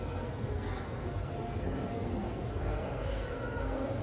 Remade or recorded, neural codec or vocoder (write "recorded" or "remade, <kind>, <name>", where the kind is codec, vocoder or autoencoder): remade, codec, SNAC